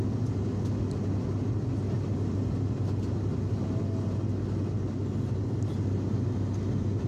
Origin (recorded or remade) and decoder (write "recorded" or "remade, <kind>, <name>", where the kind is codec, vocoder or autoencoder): recorded